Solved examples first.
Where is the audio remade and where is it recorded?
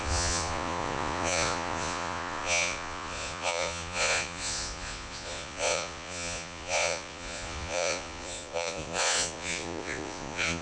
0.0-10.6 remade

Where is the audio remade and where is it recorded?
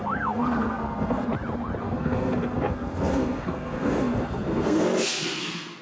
0.0-1.3 remade; 1.3-1.8 recorded; 1.8-5.8 remade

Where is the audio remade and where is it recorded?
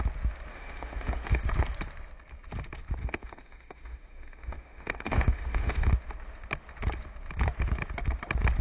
0.0-0.5 recorded; 0.5-1.4 remade; 1.4-3.0 recorded; 3.0-5.9 remade; 5.9-8.6 recorded